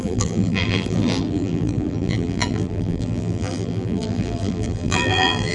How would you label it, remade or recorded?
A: remade